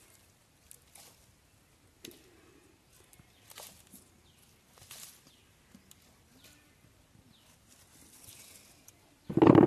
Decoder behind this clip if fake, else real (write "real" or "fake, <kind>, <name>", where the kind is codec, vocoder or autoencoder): real